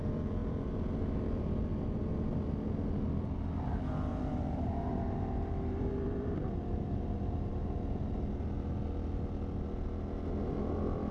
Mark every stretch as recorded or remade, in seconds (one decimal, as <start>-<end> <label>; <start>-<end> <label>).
0.0-4.1 recorded; 4.1-8.1 remade; 8.1-11.1 recorded